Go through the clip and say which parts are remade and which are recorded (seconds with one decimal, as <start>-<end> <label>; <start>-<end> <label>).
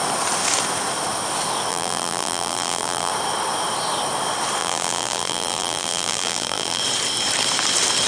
0.0-1.7 recorded; 1.7-3.1 remade; 3.1-4.6 recorded; 4.6-6.8 remade; 6.8-8.1 recorded